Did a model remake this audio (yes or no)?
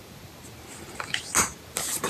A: no